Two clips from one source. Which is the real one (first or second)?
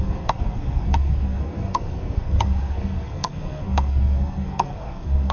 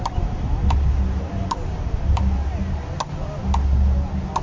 second